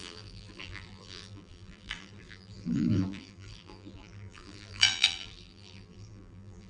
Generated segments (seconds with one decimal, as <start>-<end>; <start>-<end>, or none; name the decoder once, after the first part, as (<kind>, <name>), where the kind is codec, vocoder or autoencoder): 0.0-6.7 (vocoder, BigVGAN v2)

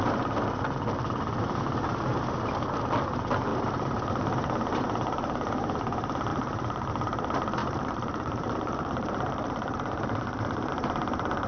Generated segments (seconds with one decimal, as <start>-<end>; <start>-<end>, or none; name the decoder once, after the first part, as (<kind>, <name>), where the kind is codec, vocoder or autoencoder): 3.5-4.1 (vocoder, BigVGAN v2); 6.3-6.9; 7.6-10.7

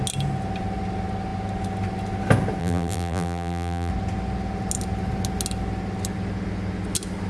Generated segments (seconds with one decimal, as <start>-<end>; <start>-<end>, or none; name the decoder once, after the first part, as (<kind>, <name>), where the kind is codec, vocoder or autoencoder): 2.6-3.9 (vocoder, BigVGAN v2)

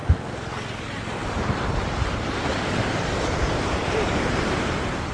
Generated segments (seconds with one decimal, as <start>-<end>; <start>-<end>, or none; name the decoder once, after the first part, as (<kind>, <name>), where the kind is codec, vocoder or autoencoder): 1.2-5.1 (vocoder, BigVGAN v2)

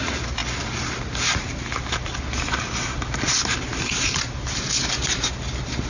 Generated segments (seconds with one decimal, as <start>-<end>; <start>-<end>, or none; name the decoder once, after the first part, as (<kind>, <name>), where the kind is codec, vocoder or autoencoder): none

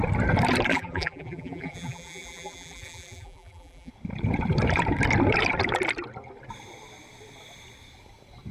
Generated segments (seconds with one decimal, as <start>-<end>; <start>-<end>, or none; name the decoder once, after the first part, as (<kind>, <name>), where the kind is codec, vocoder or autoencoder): 0.7-3.9 (vocoder, BigVGAN v2)

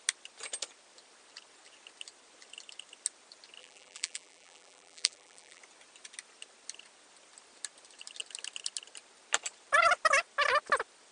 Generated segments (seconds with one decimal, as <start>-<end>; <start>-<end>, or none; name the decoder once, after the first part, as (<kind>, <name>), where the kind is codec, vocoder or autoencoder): 3.6-5.6 (vocoder, BigVGAN v2)